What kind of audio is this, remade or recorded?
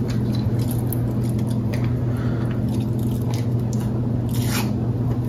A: recorded